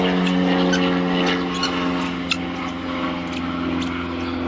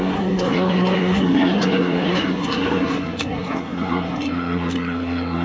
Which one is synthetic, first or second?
second